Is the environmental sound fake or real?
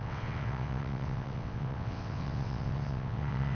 fake